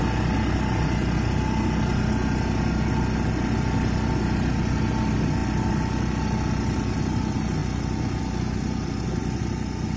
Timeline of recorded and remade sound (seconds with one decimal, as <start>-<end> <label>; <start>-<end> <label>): 0.0-10.0 recorded